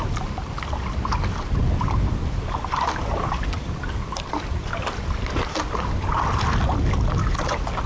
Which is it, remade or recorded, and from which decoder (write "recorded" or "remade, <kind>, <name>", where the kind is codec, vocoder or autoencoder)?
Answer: recorded